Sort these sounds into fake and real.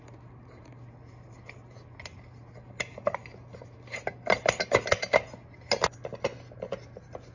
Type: real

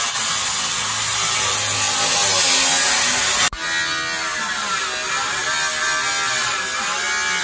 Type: real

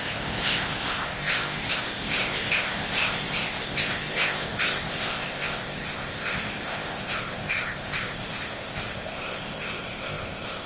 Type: fake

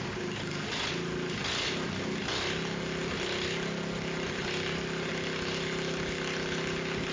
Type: real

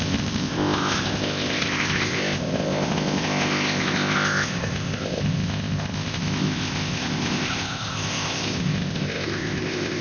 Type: fake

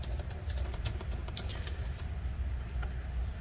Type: real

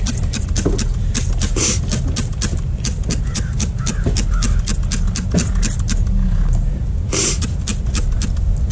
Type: real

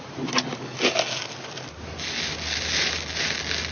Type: real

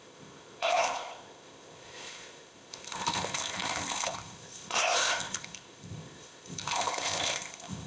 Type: fake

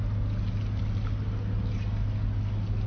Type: real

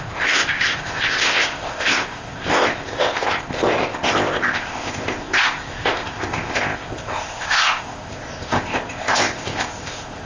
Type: fake